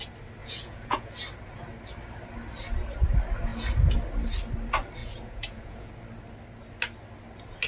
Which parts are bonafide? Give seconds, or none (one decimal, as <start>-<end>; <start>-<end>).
0.0-0.4; 1.1-5.0; 5.9-7.7